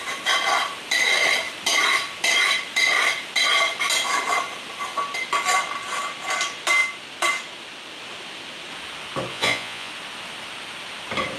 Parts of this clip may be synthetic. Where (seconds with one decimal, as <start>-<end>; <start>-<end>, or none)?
9.3-9.9